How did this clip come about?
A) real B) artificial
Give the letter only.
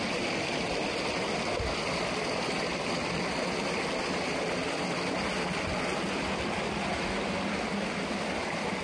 A